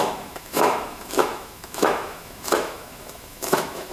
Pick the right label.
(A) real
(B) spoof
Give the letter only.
B